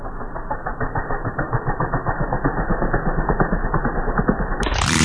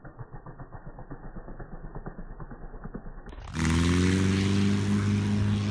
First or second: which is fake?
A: first